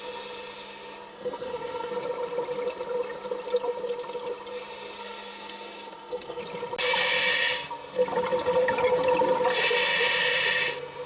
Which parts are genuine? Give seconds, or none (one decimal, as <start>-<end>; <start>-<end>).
0.0-1.1; 1.9-5.0; 6.4-11.1